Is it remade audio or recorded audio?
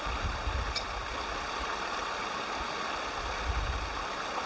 recorded